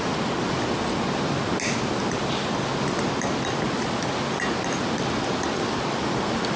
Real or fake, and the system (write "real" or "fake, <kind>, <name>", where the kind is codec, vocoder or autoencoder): real